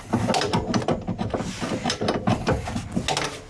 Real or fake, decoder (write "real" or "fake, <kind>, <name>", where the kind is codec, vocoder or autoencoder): real